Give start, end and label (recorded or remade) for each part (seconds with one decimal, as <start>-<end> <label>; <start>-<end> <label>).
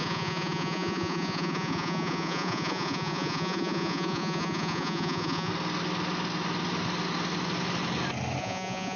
0.0-5.5 remade; 5.5-8.4 recorded; 8.4-9.0 remade